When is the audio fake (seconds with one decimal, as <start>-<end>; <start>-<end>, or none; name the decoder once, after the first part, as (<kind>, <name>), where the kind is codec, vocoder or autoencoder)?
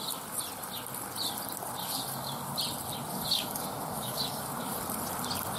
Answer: 1.8-2.5 (codec, DAC); 3.1-4.7